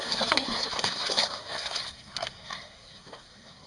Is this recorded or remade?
remade